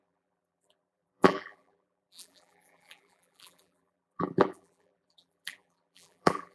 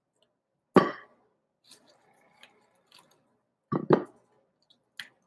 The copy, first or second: first